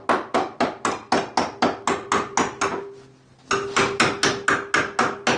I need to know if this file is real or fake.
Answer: real